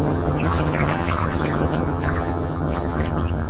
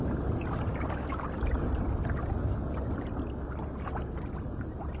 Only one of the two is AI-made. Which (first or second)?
first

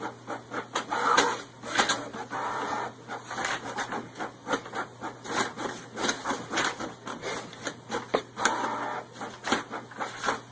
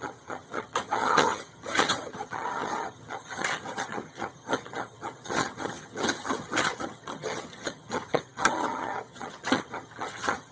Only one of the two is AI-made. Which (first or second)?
second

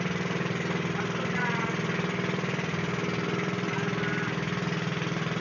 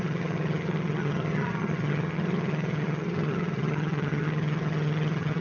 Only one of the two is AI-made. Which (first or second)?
second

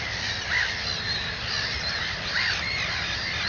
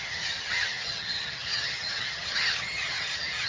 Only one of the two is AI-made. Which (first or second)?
second